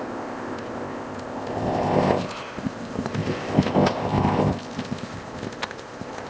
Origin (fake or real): fake